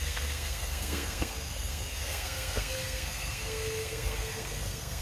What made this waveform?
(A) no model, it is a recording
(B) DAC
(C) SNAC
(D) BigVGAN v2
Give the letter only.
C